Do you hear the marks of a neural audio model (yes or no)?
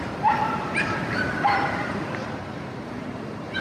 yes